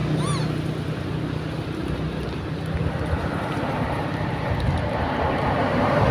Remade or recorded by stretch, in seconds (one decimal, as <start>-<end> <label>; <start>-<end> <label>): 0.0-3.1 recorded; 3.1-6.1 remade